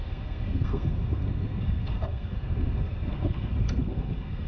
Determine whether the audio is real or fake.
fake